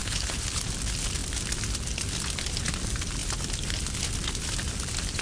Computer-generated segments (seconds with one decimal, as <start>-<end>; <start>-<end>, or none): 0.0-0.6